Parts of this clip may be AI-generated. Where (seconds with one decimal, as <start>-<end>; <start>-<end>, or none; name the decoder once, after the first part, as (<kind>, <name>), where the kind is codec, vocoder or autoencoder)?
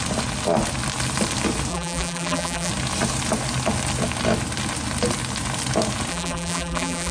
1.7-2.7 (vocoder, BigVGAN v2); 6.1-7.1